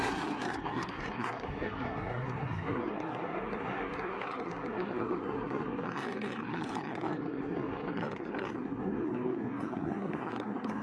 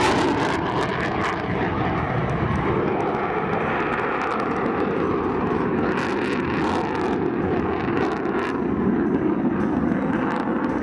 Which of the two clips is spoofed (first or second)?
first